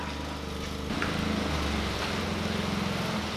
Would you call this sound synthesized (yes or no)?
no